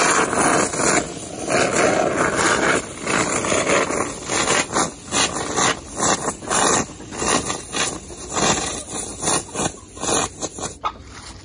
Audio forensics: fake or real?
real